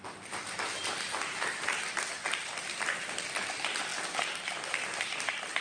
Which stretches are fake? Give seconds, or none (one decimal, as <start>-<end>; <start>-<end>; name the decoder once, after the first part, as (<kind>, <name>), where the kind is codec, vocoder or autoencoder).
none